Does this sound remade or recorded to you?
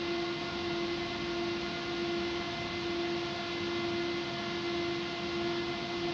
recorded